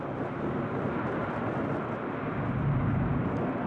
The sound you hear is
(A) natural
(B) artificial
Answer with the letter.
A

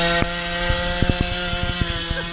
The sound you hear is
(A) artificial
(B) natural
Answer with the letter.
B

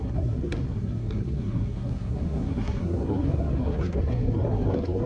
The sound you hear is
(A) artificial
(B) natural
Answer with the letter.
A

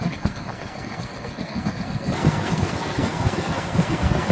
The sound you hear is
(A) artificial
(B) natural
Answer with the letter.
A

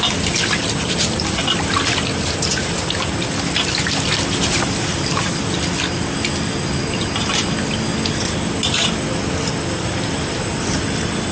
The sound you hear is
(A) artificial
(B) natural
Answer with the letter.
B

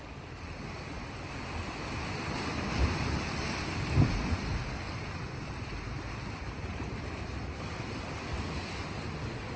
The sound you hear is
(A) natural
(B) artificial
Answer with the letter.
A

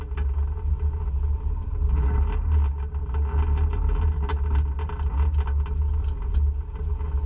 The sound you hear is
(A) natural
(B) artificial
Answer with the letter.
A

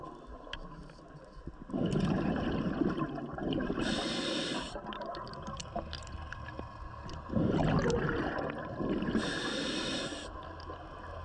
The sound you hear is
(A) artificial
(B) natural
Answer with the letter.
B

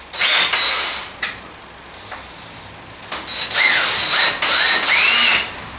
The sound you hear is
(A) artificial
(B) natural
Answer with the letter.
B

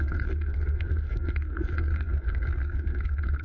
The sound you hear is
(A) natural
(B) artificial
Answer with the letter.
B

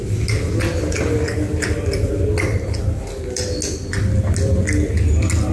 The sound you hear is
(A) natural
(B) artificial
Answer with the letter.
A